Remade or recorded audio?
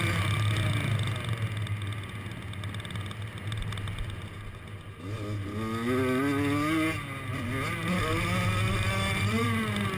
recorded